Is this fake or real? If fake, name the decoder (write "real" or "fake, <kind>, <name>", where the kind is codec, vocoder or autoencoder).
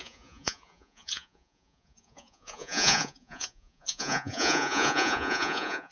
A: fake, vocoder, Vocos